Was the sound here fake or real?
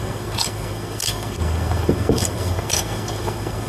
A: fake